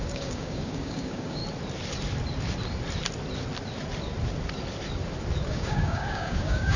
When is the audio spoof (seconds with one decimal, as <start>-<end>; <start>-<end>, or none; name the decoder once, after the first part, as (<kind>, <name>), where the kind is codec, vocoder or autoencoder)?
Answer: 0.0-1.4 (codec, DAC); 5.5-6.8